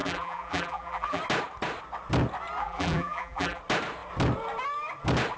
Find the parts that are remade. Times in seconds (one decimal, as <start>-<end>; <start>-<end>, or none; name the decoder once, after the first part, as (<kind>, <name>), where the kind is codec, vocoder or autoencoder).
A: 0.0-1.2 (vocoder, BigVGAN v2); 2.6-3.6